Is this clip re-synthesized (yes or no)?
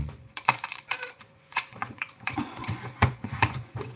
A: yes